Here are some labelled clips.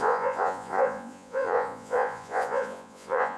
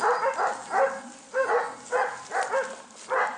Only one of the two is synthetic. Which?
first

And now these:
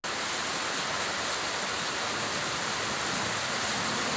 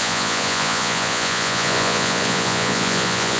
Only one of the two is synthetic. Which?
second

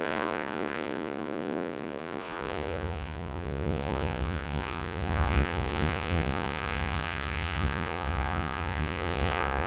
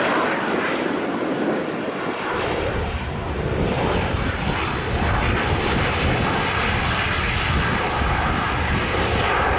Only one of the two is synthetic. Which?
first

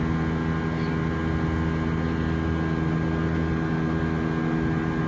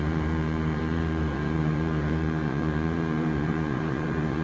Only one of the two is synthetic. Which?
second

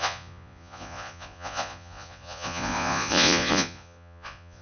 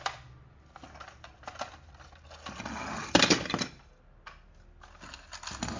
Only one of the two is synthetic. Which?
first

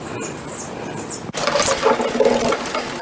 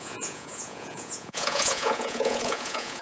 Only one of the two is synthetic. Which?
second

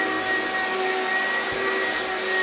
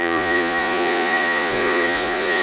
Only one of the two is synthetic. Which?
second